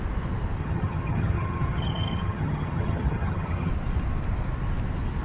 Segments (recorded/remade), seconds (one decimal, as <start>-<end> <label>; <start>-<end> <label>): 0.0-0.6 recorded; 0.6-3.7 remade; 3.7-5.2 recorded